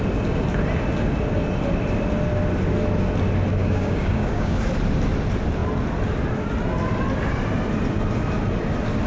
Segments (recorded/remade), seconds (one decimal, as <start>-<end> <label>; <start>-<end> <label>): 0.0-3.6 recorded; 3.6-4.6 remade; 4.6-9.1 recorded